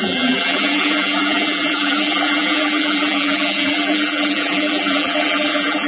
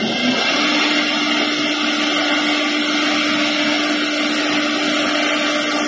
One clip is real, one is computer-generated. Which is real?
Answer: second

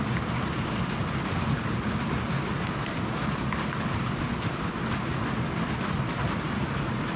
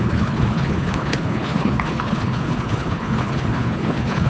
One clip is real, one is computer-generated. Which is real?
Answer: first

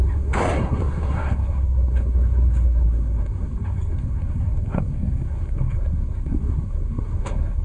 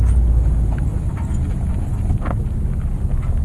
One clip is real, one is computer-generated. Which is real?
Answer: second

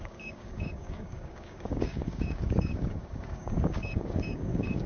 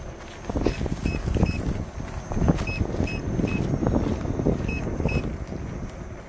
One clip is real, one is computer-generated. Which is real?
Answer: second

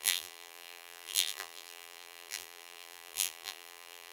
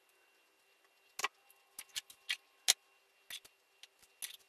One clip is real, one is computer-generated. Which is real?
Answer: second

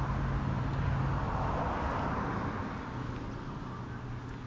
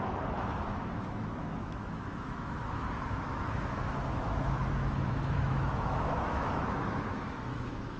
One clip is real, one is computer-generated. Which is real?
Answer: first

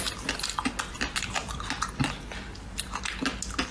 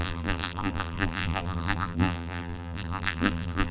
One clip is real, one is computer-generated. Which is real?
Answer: first